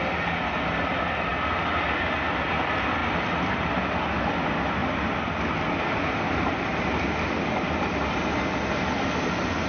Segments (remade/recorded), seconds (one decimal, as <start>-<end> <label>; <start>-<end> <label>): 0.0-3.0 recorded; 3.0-3.5 remade; 3.5-4.8 recorded; 4.8-8.0 remade; 8.0-9.7 recorded